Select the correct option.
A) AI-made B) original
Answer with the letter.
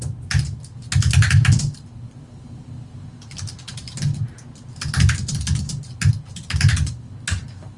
B